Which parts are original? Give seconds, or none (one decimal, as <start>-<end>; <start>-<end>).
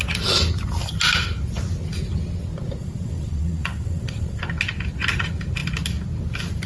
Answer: 0.0-2.8; 4.4-6.7